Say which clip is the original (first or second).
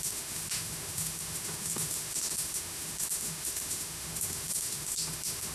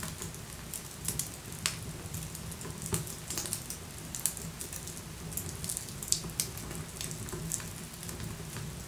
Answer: second